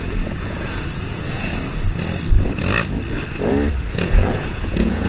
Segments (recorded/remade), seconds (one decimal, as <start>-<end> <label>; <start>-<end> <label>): 0.0-1.5 remade; 1.5-3.9 recorded; 3.9-5.1 remade